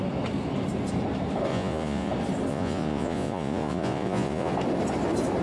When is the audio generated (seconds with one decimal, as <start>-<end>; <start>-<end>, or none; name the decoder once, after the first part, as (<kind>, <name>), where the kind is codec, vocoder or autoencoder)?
1.5-2.1 (vocoder, Vocos); 2.5-4.5